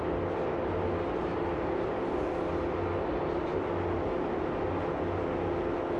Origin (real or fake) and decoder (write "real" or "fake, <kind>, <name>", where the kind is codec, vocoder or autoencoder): real